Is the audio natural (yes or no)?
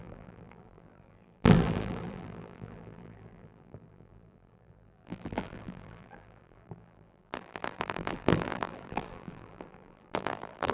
no